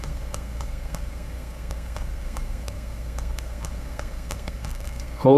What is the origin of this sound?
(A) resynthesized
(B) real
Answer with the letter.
A